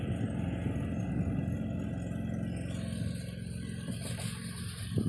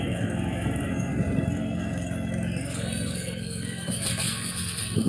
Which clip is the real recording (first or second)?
first